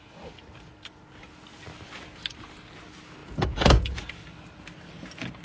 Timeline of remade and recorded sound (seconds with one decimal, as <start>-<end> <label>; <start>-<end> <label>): 0.0-3.2 recorded; 3.2-4.0 remade; 4.0-5.4 recorded